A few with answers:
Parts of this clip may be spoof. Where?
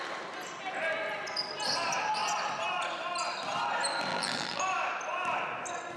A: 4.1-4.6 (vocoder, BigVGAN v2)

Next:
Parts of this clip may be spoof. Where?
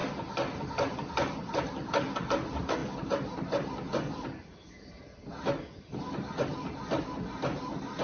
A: none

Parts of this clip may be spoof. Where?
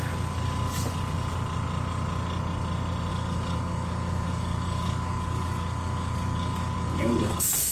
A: 3.1-7.7 (codec, DAC)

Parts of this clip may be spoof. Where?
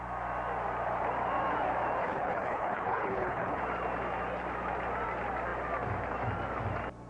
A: 2.0-3.6 (codec, HILCodec)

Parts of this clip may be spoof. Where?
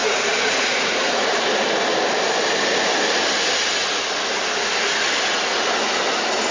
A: 0.0-1.2 (vocoder, Vocos)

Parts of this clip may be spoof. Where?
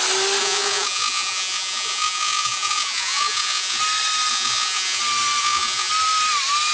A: 0.4-3.8 (vocoder, Vocos); 4.3-5.0; 5.4-5.9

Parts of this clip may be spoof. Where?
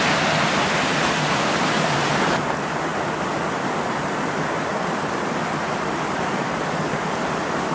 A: 0.0-0.9 (vocoder, BigVGAN v2); 1.7-7.7